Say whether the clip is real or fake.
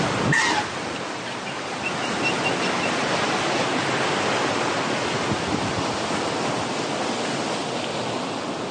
real